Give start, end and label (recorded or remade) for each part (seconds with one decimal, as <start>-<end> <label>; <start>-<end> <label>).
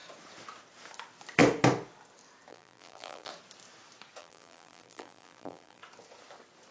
0.0-2.5 recorded; 2.5-3.3 remade; 3.3-4.2 recorded; 4.2-5.8 remade; 5.8-6.7 recorded